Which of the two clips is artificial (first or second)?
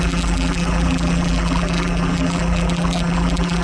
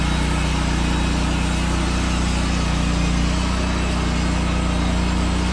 first